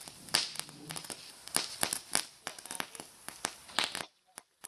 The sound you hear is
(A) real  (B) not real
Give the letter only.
A